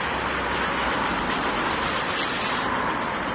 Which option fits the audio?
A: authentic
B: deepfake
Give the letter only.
A